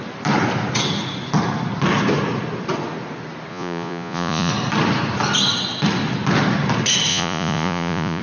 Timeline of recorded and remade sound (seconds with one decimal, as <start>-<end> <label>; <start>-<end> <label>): 0.0-3.5 recorded; 3.5-4.5 remade; 4.5-7.1 recorded; 7.1-8.2 remade